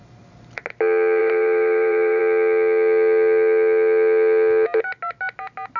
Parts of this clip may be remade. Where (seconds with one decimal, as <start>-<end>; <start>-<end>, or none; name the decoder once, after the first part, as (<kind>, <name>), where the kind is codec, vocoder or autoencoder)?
0.0-0.6 (vocoder, BigVGAN v2); 1.2-2.2